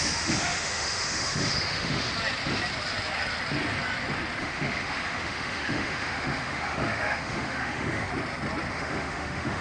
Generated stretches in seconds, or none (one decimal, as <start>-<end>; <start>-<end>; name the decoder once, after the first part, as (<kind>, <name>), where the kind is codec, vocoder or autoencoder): 0.0-2.1 (autoencoder, DAC-VAE); 4.4-8.1; 8.7-9.6